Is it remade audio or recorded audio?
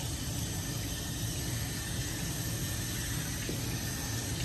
recorded